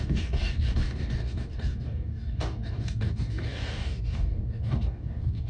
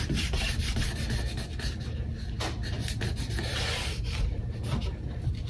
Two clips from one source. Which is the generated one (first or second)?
first